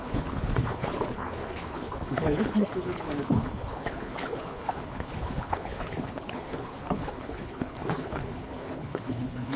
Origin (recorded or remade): remade